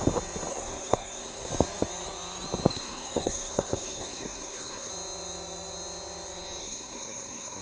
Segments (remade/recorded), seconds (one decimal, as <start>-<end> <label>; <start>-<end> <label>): 0.0-0.5 recorded; 0.5-1.5 remade; 1.5-2.7 recorded; 2.7-4.9 remade; 4.9-6.6 recorded; 6.6-7.6 remade